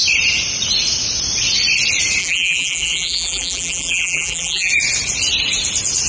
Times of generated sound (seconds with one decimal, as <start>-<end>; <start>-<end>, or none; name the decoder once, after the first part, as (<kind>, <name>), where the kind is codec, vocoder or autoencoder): 2.2-4.7 (vocoder, BigVGAN v2)